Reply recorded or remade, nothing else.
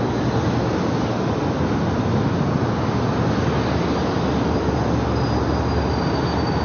recorded